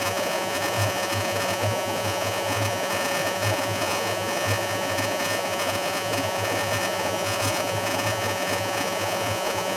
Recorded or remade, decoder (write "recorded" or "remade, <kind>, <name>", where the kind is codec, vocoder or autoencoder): remade, vocoder, Vocos